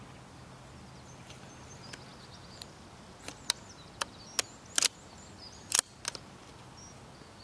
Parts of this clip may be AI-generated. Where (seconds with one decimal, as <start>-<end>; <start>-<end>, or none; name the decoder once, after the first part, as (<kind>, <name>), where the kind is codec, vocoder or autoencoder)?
none